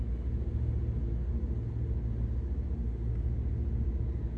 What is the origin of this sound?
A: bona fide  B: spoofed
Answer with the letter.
A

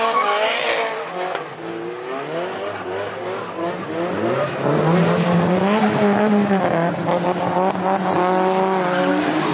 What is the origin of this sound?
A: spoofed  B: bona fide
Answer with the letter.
B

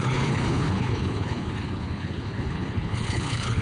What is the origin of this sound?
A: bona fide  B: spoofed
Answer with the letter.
B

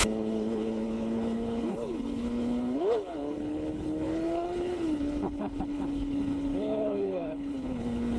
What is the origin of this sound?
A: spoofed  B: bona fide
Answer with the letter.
A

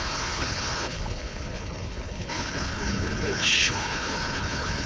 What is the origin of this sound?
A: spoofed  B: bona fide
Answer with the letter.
A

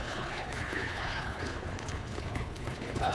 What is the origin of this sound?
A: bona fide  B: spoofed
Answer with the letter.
B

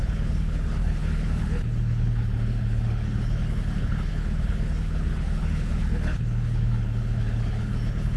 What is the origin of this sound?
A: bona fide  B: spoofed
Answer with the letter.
B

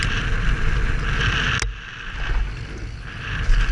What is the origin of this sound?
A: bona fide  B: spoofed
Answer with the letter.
A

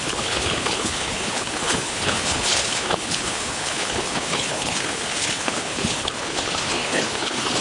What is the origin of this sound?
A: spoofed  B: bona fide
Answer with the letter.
A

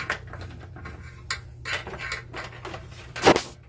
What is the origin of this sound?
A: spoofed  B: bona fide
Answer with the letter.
B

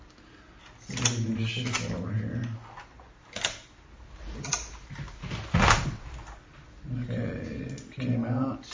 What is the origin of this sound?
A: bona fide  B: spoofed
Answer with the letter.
A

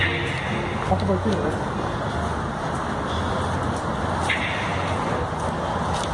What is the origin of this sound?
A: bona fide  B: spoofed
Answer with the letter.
A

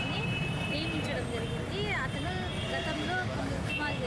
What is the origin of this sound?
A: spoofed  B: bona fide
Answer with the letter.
B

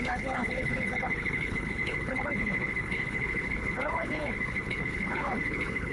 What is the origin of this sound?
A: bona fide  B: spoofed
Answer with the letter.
B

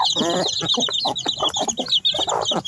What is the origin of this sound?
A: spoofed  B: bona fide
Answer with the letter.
B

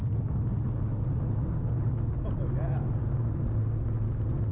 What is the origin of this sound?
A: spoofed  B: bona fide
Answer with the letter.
B